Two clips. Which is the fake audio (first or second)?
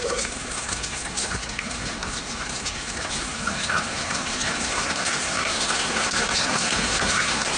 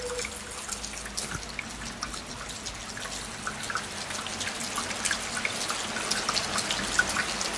first